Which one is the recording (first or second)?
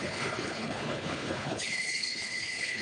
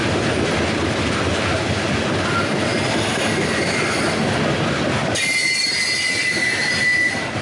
second